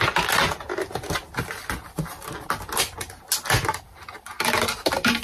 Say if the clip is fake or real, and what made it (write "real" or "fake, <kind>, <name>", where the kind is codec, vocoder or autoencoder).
real